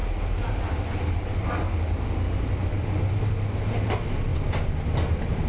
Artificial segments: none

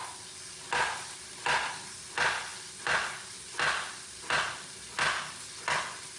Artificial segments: none

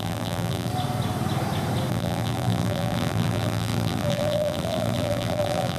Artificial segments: 0.0-0.7; 1.9-5.8

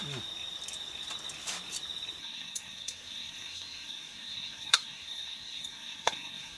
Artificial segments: 2.2-6.6

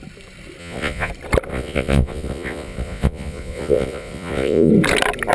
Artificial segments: 0.6-1.1; 1.5-4.7

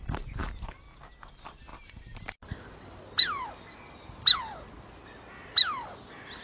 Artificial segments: none

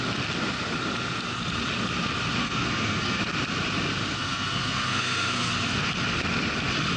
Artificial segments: 2.4-3.2; 4.1-5.5